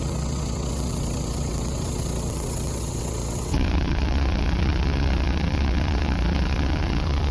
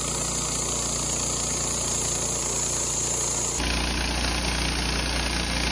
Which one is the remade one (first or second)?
first